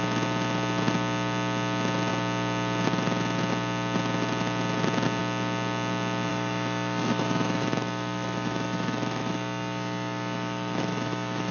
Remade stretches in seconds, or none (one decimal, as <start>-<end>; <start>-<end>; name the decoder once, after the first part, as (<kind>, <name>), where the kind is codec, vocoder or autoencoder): 6.3-11.5 (autoencoder, DAC-VAE)